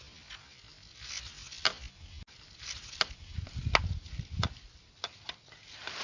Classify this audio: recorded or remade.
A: recorded